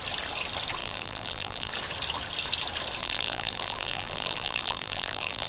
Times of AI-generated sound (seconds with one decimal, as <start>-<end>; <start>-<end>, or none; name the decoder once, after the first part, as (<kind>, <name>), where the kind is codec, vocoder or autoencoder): 0.8-1.7 (vocoder, BigVGAN v2); 3.0-5.5